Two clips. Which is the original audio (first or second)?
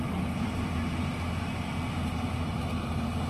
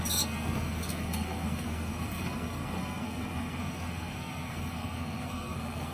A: first